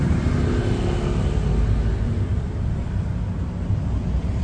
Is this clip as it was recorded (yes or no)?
yes